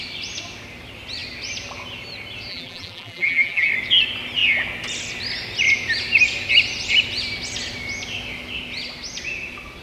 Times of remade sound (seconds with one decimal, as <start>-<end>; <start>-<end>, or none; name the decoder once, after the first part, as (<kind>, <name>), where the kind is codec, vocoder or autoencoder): 2.5-3.7 (vocoder, BigVGAN v2)

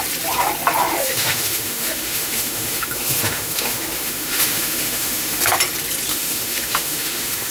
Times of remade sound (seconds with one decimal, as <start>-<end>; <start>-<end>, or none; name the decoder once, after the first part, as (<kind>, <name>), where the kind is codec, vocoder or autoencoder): 0.9-5.4 (autoencoder, DAC-VAE); 6.1-7.5

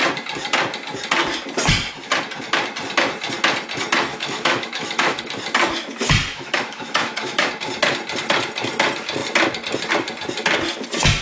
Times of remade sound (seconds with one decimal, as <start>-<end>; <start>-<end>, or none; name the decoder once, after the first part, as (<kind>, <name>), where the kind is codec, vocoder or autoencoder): 4.1-5.2 (autoencoder, DAC-VAE); 6.3-7.5

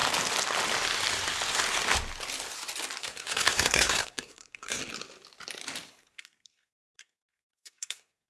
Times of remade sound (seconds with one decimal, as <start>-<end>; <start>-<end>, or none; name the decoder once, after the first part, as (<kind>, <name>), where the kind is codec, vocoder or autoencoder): 3.0-4.8 (codec, SNAC); 5.9-8.3

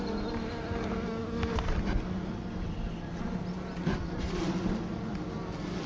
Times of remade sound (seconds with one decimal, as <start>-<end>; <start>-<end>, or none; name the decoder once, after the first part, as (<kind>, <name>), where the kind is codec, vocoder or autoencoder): none

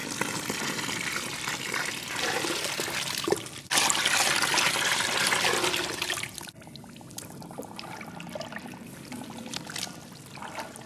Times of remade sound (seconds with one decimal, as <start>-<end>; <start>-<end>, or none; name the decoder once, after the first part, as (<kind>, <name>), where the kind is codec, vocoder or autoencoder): none

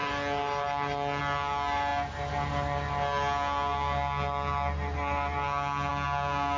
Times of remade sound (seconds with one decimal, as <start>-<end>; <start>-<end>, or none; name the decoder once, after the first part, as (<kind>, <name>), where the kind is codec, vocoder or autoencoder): none

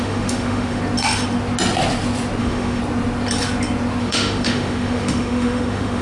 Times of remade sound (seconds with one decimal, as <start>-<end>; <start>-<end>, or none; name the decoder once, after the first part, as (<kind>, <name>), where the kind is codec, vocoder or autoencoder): 0.0-0.8 (autoencoder, DAC-VAE); 2.4-2.8; 4.0-6.0